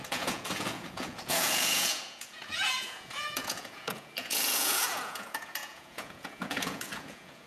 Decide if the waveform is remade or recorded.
remade